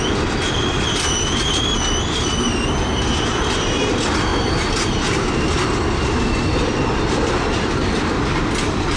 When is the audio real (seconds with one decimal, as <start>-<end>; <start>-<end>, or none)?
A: 0.0-9.0